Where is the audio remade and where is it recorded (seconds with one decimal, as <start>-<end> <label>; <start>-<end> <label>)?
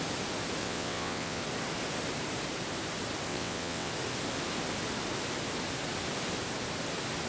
0.0-0.6 recorded; 0.6-1.4 remade; 1.4-3.3 recorded; 3.3-3.9 remade; 3.9-7.3 recorded